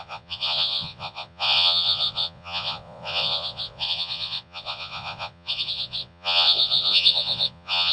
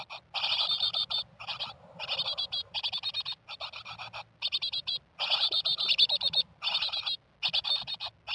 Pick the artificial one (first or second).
first